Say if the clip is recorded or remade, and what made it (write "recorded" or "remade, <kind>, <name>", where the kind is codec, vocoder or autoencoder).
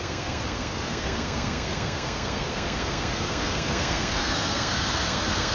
remade, codec, SNAC